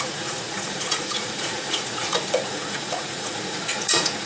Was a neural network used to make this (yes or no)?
yes